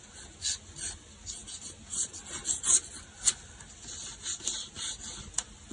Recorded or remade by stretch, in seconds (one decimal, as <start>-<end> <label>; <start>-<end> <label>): 0.0-5.7 recorded